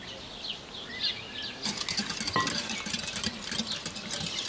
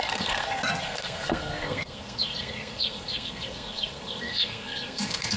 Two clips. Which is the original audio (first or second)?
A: first